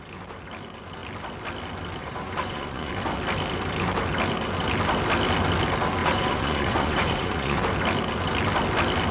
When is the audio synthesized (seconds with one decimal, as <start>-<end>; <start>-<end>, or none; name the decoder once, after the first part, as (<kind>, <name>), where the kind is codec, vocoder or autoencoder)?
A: 2.0-2.9 (vocoder, Vocos); 6.0-7.6